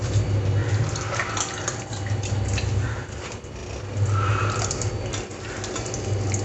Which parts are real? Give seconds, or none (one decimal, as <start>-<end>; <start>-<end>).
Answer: 0.0-6.4